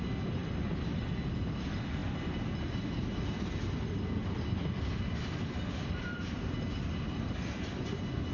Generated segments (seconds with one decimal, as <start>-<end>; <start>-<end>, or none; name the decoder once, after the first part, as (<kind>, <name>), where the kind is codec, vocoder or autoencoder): none